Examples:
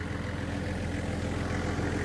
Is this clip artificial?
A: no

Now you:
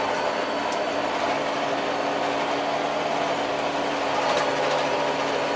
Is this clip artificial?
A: no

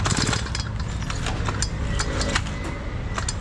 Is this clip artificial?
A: no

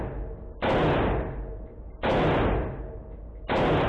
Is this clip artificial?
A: no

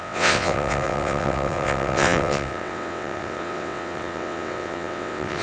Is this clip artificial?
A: yes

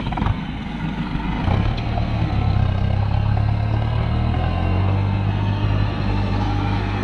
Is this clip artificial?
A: yes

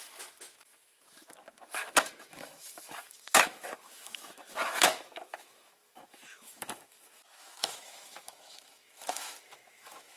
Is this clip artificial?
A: yes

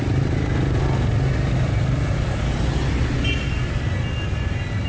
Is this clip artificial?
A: no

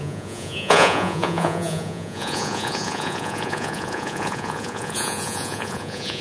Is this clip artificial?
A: yes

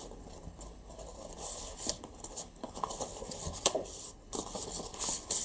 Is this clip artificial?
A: yes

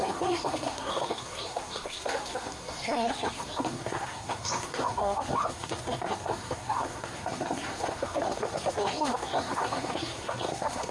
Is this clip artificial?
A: yes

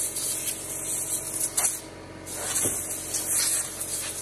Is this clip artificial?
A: no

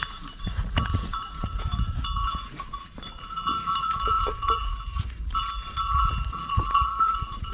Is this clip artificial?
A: yes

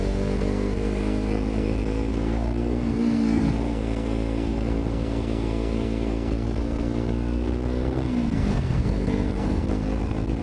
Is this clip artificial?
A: yes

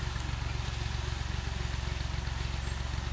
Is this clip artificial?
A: no